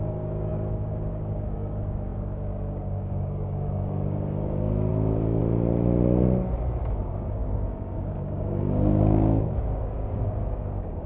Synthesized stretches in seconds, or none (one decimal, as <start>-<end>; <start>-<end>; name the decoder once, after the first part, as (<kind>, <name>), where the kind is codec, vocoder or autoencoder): 0.0-5.4 (codec, DAC); 6.8-11.1